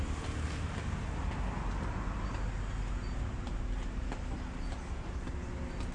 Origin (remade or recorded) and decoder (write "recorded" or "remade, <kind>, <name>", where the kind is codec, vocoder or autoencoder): recorded